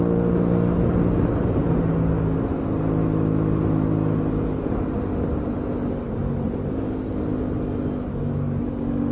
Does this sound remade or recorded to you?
recorded